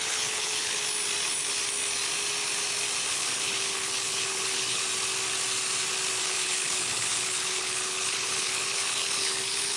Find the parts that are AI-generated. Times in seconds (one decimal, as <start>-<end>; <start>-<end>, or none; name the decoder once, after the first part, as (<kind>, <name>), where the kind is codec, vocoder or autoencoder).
0.0-0.8 (codec, HILCodec); 3.1-4.8; 6.2-9.8